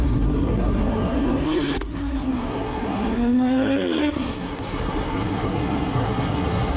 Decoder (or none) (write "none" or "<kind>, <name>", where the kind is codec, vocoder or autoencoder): codec, SNAC